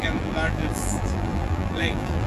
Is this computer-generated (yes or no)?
yes